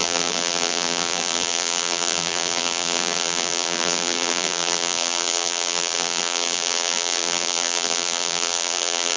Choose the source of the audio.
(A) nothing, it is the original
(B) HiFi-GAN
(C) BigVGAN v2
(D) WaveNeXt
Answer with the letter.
C